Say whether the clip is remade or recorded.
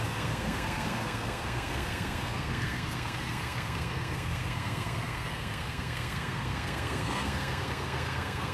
remade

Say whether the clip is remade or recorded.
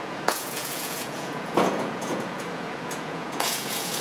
remade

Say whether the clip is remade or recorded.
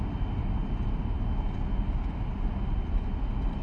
recorded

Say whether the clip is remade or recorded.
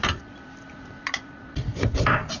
recorded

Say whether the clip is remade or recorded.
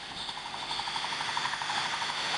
remade